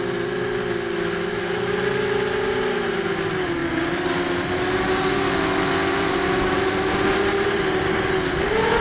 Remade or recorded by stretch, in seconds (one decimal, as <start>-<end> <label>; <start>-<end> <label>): 0.0-8.8 recorded